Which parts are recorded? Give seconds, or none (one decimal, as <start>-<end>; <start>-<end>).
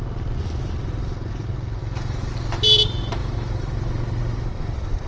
0.0-1.8; 2.3-3.2; 3.7-5.1